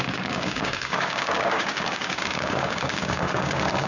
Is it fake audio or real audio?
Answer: fake